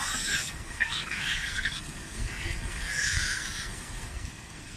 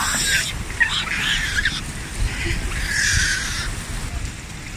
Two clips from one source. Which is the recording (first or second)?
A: second